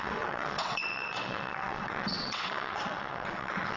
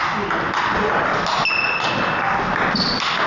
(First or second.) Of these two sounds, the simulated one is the first